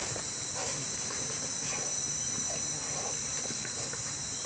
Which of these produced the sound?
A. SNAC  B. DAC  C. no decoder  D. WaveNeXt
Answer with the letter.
C